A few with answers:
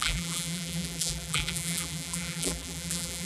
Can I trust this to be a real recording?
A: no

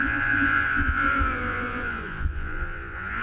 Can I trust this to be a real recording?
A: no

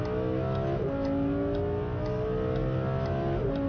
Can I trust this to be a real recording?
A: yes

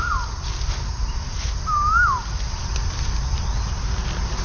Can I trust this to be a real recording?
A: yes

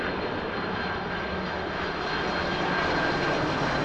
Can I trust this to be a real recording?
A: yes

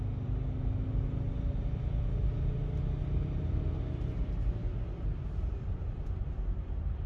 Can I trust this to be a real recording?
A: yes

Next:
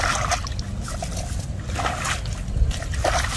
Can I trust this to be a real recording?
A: yes